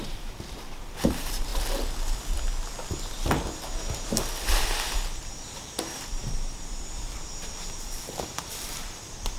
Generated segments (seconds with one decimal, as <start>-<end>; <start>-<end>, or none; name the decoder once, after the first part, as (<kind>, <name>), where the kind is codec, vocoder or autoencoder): 0.0-1.5 (vocoder, BigVGAN v2); 5.2-9.4